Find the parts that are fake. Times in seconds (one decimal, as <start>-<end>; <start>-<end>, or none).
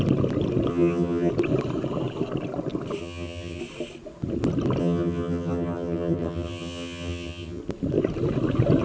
0.7-1.3; 3.0-3.6; 4.8-7.6